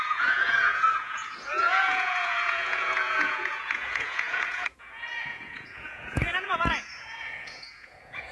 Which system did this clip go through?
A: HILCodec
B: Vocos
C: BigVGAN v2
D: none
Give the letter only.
B